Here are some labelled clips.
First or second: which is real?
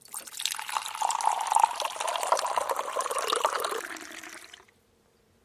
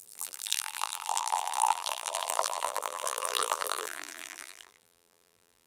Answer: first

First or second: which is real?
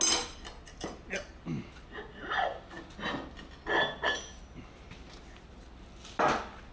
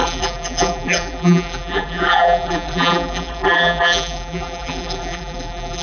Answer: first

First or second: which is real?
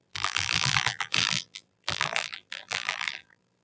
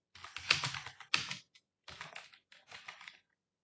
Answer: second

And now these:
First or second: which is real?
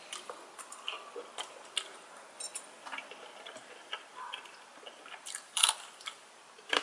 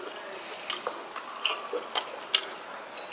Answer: second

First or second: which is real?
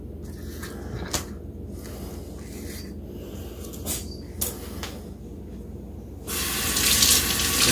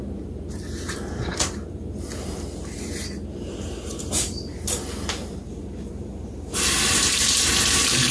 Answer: first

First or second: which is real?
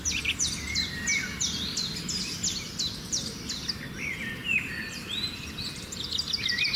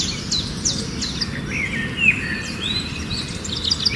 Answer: second